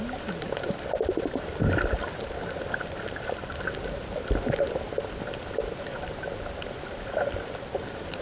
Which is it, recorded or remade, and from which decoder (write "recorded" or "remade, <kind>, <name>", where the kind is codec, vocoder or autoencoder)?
recorded